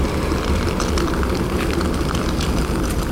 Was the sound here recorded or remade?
remade